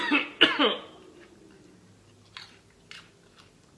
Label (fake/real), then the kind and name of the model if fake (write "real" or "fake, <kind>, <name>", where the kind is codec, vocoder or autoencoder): real